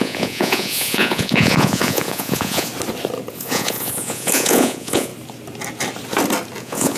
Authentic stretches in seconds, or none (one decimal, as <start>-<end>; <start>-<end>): 2.7-3.3; 5.1-6.6